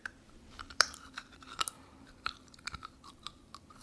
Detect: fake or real fake